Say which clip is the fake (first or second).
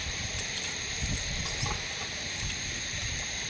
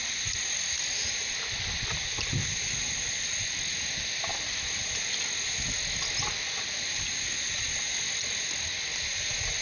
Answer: first